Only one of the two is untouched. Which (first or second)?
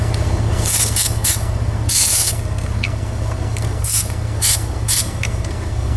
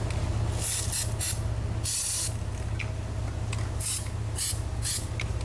second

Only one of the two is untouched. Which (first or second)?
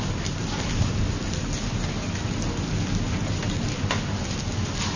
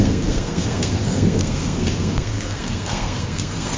first